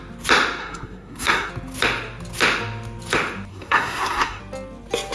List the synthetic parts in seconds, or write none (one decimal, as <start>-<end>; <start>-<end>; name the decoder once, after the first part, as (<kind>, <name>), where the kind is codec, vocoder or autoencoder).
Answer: 0.6-1.5 (codec, SNAC); 3.5-4.4